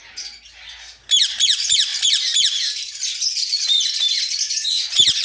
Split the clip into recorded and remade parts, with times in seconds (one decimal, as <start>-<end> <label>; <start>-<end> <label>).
0.0-5.2 recorded